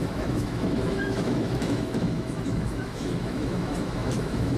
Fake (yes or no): yes